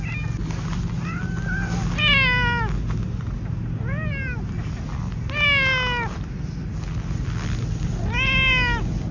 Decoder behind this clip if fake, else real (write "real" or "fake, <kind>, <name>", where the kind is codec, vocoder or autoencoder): real